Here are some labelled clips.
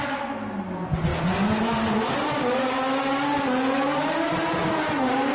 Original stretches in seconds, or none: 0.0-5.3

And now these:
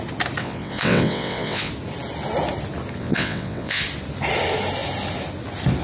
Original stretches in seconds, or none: 0.0-0.4; 1.7-3.0; 3.8-5.8

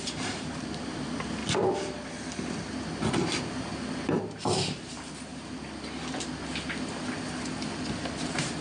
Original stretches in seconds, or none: 1.4-4.7; 5.3-8.1

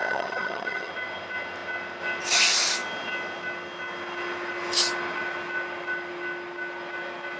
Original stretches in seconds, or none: 0.9-7.4